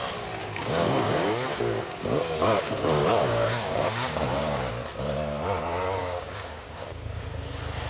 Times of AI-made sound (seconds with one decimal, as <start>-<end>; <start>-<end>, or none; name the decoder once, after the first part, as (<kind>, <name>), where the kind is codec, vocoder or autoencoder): 0.4-4.7 (codec, DAC); 6.0-7.2